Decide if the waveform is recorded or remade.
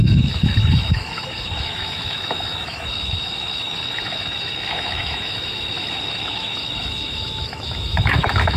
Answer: remade